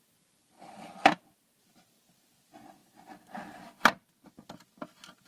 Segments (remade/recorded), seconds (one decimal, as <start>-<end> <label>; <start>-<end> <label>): 0.0-5.3 recorded